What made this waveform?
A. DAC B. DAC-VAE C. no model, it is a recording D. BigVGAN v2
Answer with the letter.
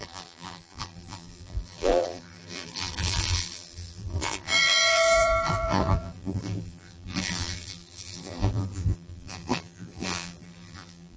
D